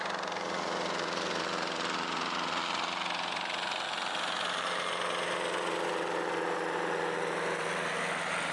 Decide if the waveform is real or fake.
real